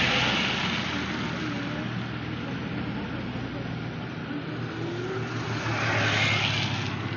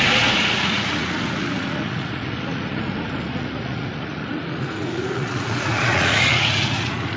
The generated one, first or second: second